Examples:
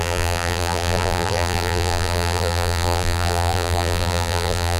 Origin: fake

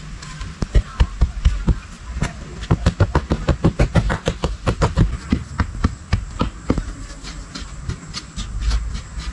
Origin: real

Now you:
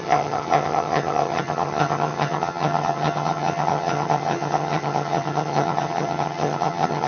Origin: fake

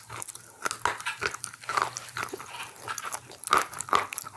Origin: real